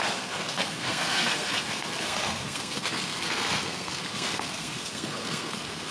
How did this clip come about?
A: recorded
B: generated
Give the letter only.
B